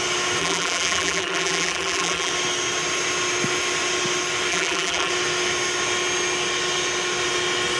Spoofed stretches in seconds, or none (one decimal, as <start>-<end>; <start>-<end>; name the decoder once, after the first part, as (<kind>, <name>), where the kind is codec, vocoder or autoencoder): 0.4-2.3 (vocoder, BigVGAN v2); 4.5-5.1